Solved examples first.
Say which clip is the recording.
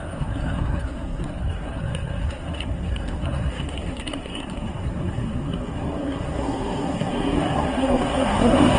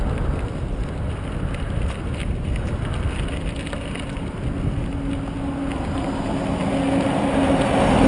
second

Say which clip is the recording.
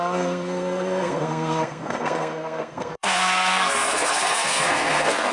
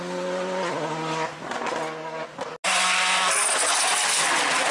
second